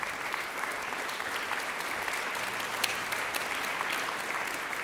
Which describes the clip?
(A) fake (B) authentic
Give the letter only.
B